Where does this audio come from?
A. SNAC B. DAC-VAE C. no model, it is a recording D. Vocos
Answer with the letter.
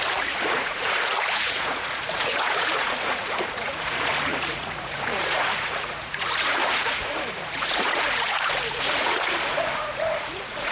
D